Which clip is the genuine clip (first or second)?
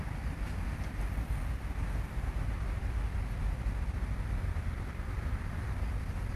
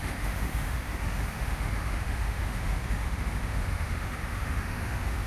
first